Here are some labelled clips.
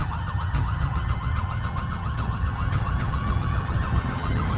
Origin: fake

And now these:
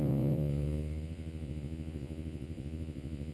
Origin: fake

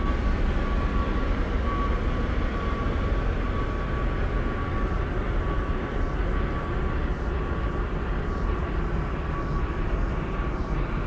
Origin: real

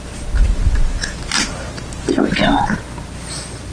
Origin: real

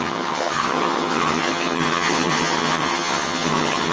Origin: fake